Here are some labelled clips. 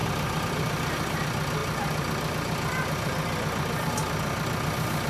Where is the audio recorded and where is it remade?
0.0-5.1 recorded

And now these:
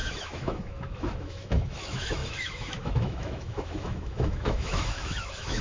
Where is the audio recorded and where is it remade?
0.0-5.6 remade

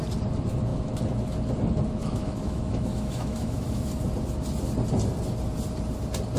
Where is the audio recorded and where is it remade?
0.0-2.0 recorded; 2.0-3.9 remade; 3.9-6.4 recorded

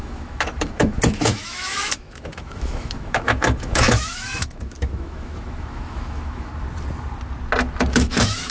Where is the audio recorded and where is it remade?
0.0-6.5 remade; 6.5-7.9 recorded; 7.9-8.5 remade

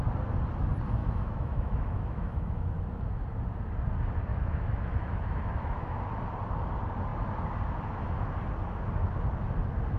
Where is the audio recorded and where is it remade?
0.0-1.0 recorded; 1.0-2.8 remade; 2.8-4.3 recorded; 4.3-6.0 remade; 6.0-10.0 recorded